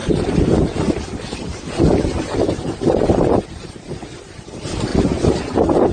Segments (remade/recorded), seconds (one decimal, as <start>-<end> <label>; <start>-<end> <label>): 0.0-5.9 recorded